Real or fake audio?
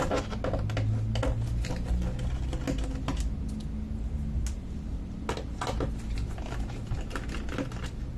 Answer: real